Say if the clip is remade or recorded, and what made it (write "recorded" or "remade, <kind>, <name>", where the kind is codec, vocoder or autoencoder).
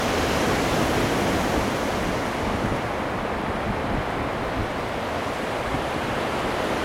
recorded